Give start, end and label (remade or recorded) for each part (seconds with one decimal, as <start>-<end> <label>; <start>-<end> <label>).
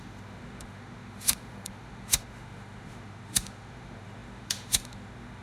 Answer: 0.0-5.4 remade